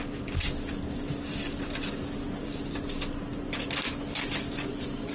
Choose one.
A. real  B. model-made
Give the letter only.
A